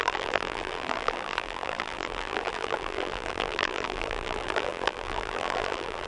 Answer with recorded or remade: remade